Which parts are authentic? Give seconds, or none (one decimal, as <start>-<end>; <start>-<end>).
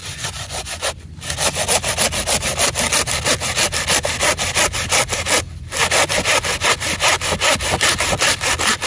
0.9-8.9